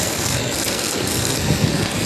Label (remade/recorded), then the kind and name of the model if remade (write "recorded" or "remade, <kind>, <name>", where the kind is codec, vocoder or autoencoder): remade, codec, SNAC